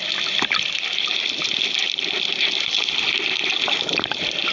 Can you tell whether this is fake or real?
real